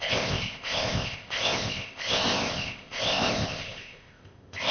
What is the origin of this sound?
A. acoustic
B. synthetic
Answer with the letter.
B